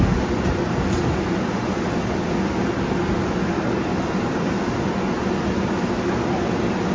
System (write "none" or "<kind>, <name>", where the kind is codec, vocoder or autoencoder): none